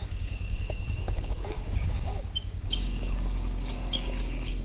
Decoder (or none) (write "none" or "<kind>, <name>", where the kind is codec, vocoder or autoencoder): codec, DAC